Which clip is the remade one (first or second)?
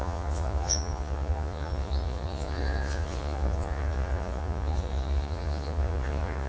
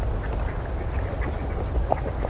first